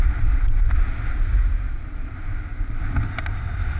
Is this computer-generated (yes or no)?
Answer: no